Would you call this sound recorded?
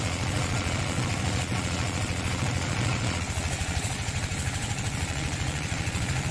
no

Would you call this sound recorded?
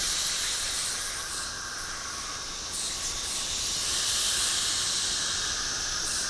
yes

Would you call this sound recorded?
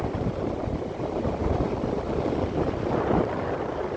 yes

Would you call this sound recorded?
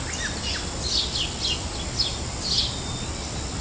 yes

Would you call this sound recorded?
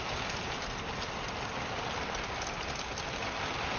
yes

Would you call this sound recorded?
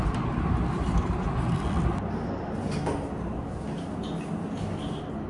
yes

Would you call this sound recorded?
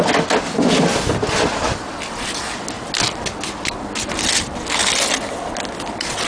yes